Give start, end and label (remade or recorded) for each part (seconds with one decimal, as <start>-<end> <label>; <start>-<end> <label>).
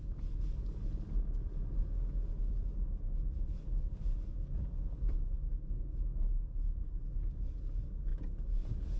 0.0-1.8 recorded; 1.8-2.4 remade; 2.4-9.0 recorded